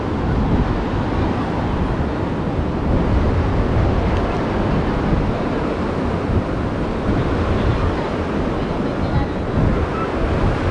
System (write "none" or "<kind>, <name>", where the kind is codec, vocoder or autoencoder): none